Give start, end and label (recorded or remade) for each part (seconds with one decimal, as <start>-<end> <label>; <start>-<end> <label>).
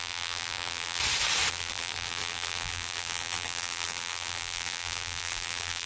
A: 0.0-1.0 remade; 1.0-1.5 recorded; 1.5-5.9 remade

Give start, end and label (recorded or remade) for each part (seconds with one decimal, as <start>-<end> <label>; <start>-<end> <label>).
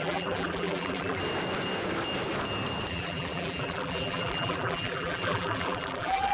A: 0.0-1.2 remade; 1.2-2.9 recorded; 2.9-6.3 remade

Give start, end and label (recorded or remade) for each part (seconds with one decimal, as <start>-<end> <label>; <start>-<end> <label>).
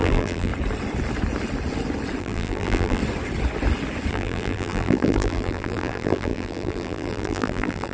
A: 0.0-0.5 remade; 0.5-2.2 recorded; 2.2-3.0 remade; 3.0-4.1 recorded; 4.1-7.9 remade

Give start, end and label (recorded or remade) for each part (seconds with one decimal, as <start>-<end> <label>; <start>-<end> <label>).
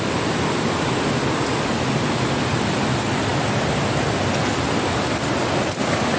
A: 0.0-6.2 recorded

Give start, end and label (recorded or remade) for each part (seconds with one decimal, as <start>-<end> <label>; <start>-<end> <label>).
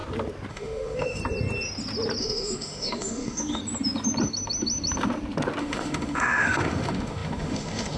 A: 0.0-0.5 recorded; 0.5-1.2 remade; 1.2-2.2 recorded; 2.2-3.6 remade; 3.6-5.6 recorded; 5.6-8.0 remade